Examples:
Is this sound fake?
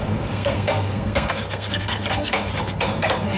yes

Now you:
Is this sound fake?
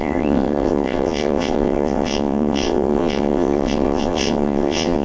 yes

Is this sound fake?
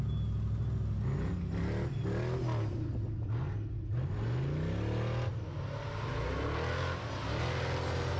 no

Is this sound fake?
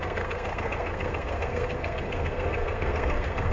yes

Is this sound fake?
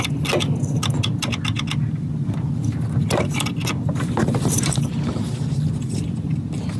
no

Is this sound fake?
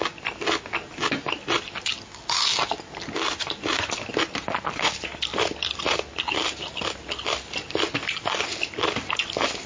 no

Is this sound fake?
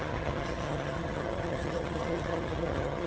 yes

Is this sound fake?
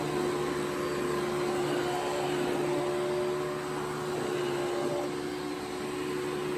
no